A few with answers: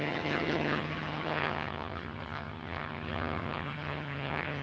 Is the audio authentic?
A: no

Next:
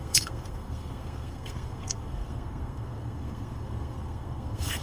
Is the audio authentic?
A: no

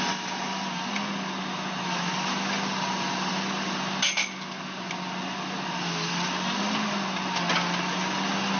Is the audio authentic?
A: yes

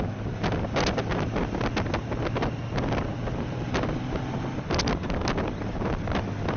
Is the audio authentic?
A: yes